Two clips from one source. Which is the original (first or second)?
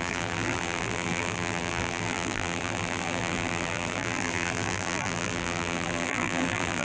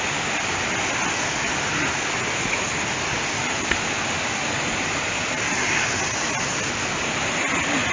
second